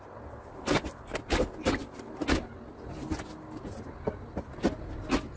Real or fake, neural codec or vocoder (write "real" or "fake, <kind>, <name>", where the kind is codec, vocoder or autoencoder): real